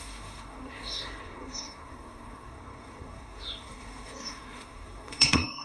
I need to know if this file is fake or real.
fake